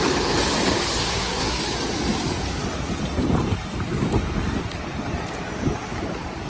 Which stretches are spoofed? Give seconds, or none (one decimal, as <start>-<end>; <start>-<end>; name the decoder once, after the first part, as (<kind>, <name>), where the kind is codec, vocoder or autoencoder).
1.0-1.6 (codec, SNAC)